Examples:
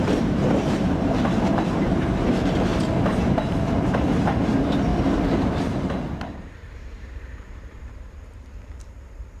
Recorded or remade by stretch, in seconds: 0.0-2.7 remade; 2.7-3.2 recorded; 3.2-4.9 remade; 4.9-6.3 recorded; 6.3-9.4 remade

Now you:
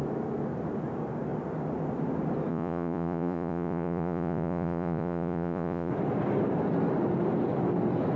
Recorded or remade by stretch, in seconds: 0.0-2.5 recorded; 2.5-5.9 remade; 5.9-8.2 recorded

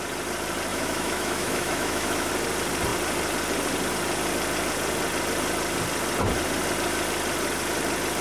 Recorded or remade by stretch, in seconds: 0.0-0.7 recorded; 0.7-2.3 remade; 2.3-8.2 recorded